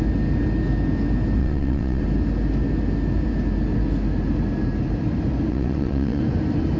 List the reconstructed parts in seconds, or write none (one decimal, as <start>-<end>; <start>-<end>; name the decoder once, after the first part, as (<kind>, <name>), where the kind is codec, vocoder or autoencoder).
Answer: 1.4-2.0 (vocoder, WaveNeXt); 5.5-6.2